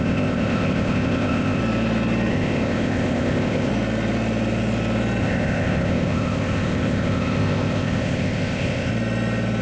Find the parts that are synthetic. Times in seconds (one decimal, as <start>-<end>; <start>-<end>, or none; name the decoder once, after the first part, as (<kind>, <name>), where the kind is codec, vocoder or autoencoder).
0.0-1.6 (codec, ZipCodec); 2.3-3.7; 5.2-8.9